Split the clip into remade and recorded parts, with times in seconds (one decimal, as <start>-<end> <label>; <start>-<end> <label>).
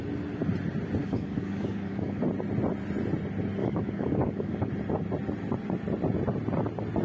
0.0-1.0 recorded; 1.0-2.2 remade; 2.2-3.6 recorded; 3.6-4.7 remade; 4.7-7.0 recorded